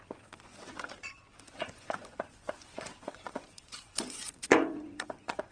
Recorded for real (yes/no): no